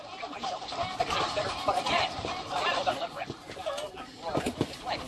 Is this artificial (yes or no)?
no